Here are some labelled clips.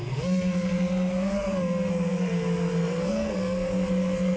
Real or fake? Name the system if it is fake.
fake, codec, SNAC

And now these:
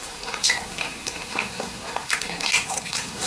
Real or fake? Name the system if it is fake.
fake, codec, SNAC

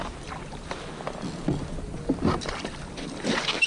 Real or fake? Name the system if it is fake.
real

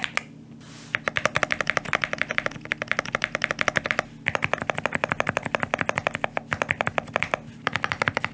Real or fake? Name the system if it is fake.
real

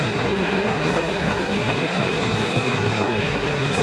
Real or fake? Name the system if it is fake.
fake, codec, SNAC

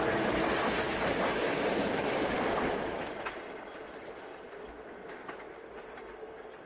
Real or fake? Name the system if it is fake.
real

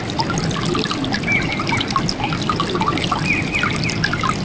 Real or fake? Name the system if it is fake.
real